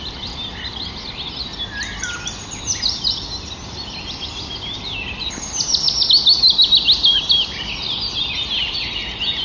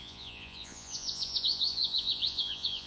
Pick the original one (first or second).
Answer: first